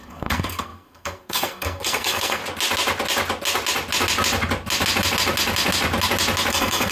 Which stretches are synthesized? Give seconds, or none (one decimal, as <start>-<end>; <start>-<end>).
0.0-2.4; 6.5-6.9